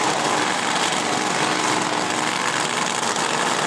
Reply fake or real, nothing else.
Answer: real